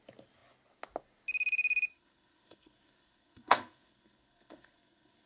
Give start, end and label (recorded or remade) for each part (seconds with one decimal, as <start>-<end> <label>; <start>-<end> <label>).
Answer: 0.0-1.9 recorded; 1.9-5.3 remade